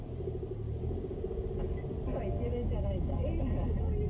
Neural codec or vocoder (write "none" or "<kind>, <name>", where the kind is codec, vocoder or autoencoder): none